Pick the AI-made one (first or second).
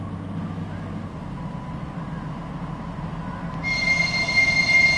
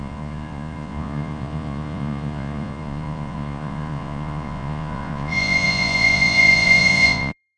second